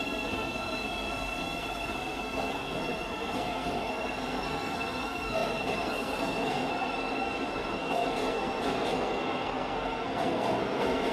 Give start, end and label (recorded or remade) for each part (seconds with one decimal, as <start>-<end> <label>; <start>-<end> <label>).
0.0-11.1 remade